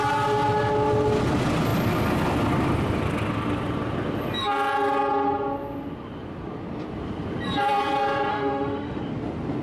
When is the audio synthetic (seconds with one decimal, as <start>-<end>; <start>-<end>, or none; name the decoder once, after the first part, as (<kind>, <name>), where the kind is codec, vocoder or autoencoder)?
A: 8.3-9.0 (autoencoder, DAC-VAE)